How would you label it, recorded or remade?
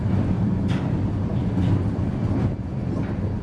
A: recorded